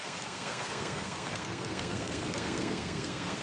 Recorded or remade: remade